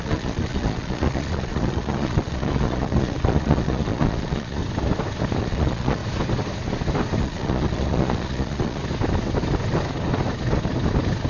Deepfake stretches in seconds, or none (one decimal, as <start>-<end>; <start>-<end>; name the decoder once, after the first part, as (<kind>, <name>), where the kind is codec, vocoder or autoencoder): 0.0-4.6 (vocoder, Vocos); 5.4-6.0; 7.2-8.8